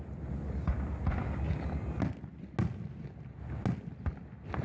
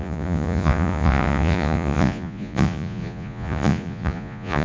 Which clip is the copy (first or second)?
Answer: second